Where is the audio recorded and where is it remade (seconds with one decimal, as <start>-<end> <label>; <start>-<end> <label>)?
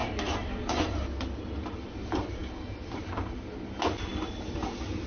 0.0-5.1 recorded